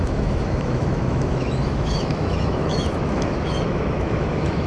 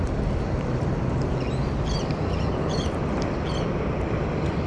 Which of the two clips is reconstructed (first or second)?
first